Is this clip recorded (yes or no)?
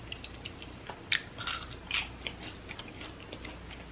yes